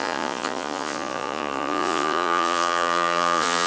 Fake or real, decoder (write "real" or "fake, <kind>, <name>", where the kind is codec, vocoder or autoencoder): fake, vocoder, Vocos